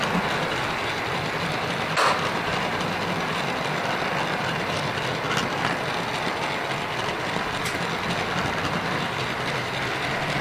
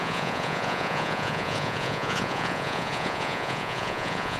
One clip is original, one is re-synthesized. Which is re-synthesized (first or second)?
second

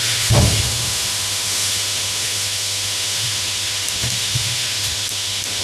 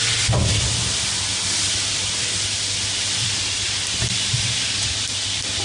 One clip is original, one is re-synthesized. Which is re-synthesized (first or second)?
first